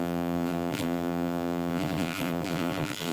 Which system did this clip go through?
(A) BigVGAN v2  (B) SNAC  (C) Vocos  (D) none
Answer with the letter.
A